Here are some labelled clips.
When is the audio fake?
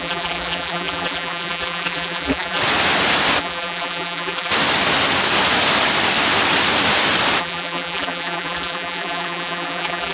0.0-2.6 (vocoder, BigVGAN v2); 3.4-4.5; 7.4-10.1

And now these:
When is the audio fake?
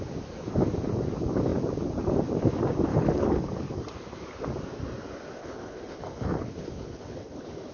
2.9-3.5 (codec, HILCodec); 5.4-7.7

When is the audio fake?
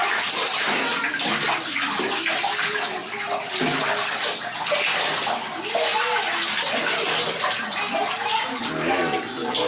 3.0-3.9 (vocoder, BigVGAN v2)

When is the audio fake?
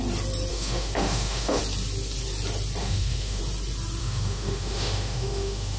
0.5-1.6 (autoencoder, DAC-VAE); 2.8-3.4; 4.0-5.8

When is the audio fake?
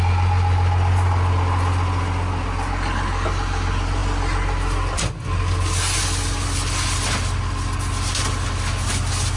none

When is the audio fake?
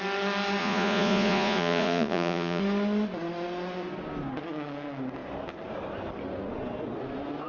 0.6-2.6 (vocoder, Vocos)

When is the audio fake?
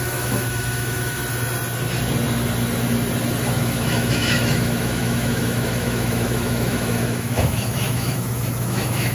0.0-1.2 (autoencoder, DAC-VAE); 3.4-9.1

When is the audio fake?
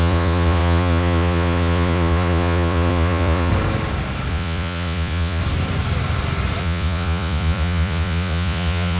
0.0-3.5 (vocoder, Vocos); 4.3-5.4; 6.6-9.0